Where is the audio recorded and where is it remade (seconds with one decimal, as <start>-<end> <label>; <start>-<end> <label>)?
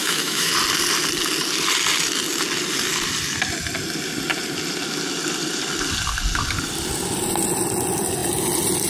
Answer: 0.0-0.5 remade; 0.5-8.9 recorded